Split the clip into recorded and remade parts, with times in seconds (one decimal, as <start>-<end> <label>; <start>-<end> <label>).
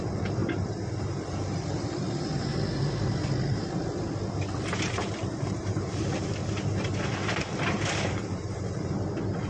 0.0-2.5 remade; 2.5-5.4 recorded; 5.4-6.4 remade; 6.4-7.7 recorded; 7.7-9.5 remade